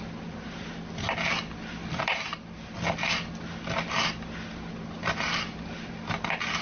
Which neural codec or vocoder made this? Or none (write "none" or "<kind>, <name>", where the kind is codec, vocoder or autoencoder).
none